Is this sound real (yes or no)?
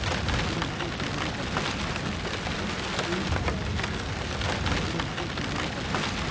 yes